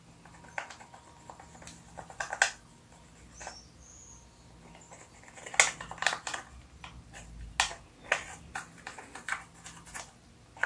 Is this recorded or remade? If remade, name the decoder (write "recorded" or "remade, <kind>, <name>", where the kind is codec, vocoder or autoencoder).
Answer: recorded